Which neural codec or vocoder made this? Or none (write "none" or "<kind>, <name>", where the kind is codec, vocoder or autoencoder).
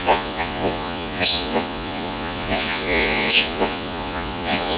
vocoder, Vocos